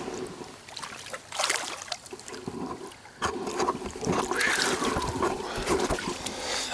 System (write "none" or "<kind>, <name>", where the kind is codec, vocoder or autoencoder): none